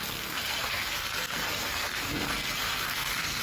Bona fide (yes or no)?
no